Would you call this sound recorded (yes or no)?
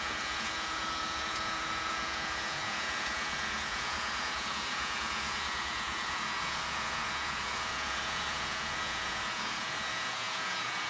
no